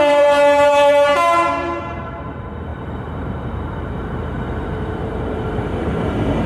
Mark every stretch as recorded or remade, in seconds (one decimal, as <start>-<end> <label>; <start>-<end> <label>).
0.0-1.1 remade; 1.1-1.8 recorded; 1.8-6.5 remade